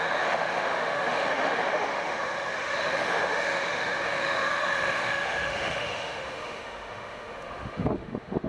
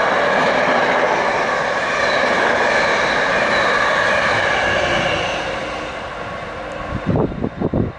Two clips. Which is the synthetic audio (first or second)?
first